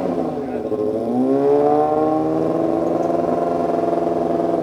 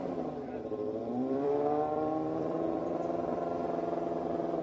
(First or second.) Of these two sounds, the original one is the first